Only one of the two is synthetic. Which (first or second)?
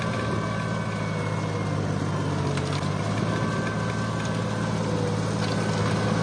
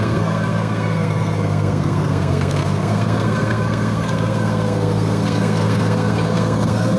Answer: second